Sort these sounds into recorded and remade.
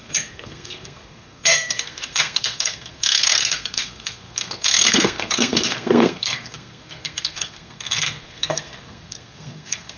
remade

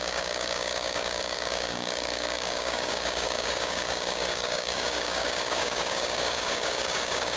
remade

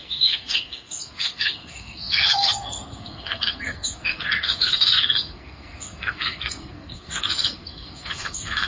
remade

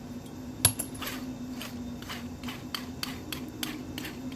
recorded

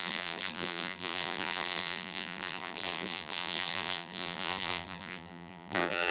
remade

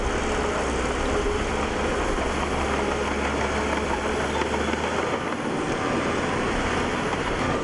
recorded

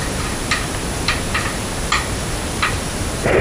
recorded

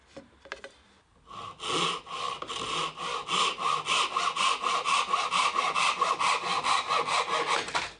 recorded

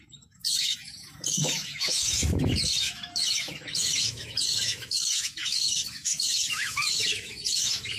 remade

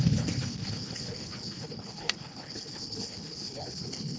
remade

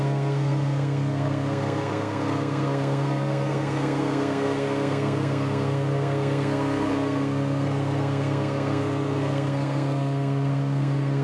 remade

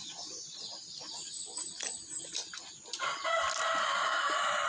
recorded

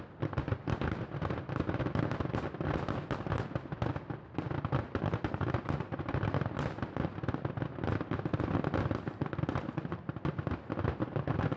recorded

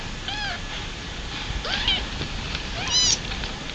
recorded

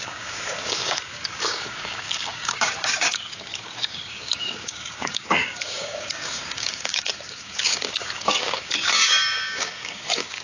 remade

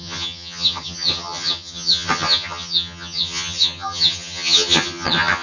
remade